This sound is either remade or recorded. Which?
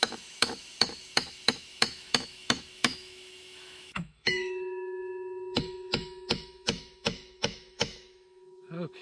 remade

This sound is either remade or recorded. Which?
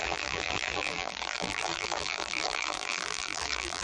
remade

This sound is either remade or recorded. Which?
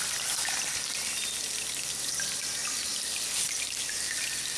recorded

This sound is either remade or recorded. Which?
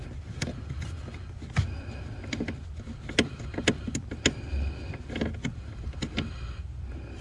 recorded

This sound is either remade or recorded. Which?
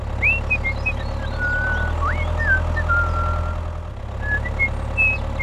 recorded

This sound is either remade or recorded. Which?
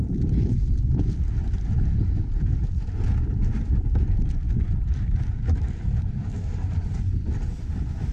recorded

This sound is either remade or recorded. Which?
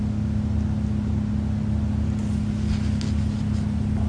recorded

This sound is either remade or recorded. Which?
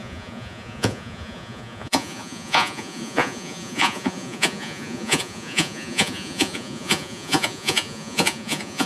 remade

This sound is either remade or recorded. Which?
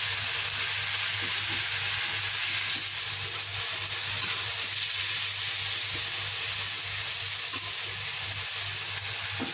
recorded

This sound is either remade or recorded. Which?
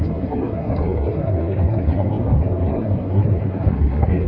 remade